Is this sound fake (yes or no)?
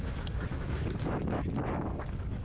yes